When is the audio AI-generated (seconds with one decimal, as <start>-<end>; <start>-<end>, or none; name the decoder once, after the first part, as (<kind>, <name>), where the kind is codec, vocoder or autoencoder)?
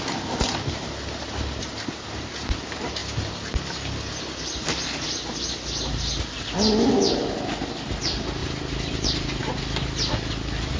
none